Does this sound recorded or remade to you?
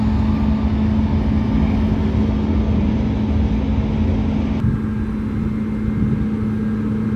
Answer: recorded